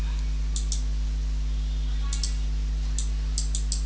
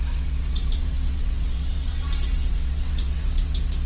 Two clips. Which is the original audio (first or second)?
first